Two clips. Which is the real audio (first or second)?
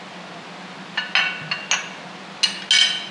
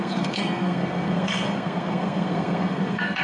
first